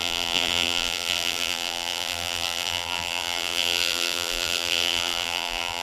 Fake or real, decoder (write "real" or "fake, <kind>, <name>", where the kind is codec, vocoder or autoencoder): fake, vocoder, BigVGAN v2